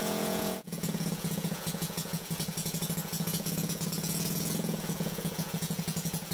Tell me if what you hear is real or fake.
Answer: fake